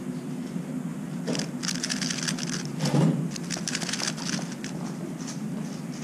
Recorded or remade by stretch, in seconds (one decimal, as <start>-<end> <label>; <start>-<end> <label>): 0.0-6.0 recorded